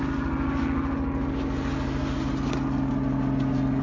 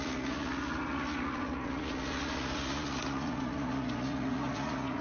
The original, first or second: first